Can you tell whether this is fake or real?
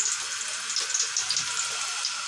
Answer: real